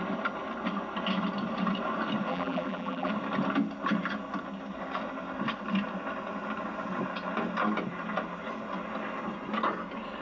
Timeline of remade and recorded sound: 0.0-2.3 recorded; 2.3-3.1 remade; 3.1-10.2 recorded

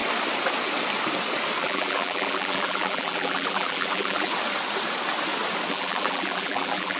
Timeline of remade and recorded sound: 0.0-1.6 recorded; 1.6-4.3 remade; 4.3-5.7 recorded; 5.7-7.0 remade